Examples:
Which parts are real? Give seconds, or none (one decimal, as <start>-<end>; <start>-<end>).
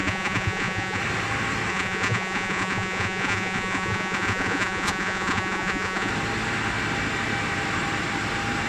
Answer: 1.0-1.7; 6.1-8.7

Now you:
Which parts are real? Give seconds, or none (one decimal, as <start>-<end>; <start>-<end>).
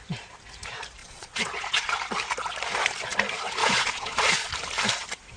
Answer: 0.0-1.0; 2.0-3.6; 4.5-5.4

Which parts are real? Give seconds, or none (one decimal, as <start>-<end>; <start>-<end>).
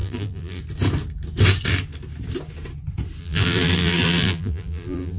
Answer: 0.6-3.2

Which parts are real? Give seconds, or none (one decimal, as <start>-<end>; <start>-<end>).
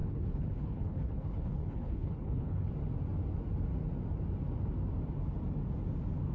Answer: 2.7-6.3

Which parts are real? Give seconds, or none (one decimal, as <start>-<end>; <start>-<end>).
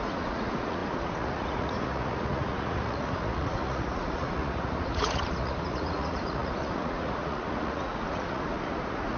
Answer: none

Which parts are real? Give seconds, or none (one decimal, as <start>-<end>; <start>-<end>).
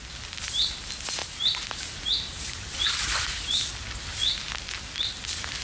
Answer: 0.0-5.6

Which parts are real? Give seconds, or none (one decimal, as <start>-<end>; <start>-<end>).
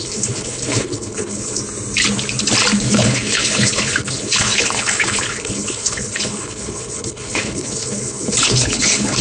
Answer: 1.6-2.8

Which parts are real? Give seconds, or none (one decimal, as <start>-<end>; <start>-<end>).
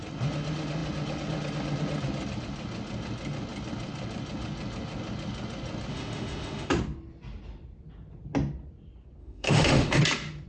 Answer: 0.0-5.9; 6.7-9.2; 10.0-10.5